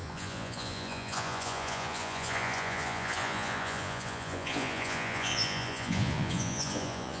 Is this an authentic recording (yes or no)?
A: no